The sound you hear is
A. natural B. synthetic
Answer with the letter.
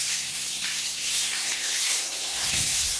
B